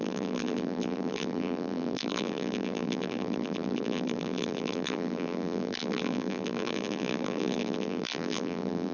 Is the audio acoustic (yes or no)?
no